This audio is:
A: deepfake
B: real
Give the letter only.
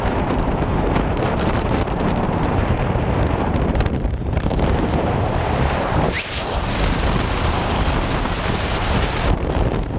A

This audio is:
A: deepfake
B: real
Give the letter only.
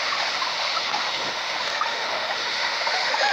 A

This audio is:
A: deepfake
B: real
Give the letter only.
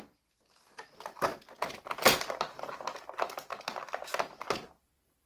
B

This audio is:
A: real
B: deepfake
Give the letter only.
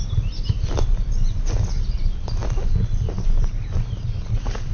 A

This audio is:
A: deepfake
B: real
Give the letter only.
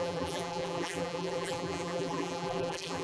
A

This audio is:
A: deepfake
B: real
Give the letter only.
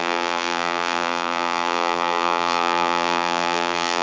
A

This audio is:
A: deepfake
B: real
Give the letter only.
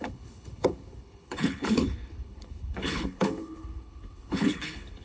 A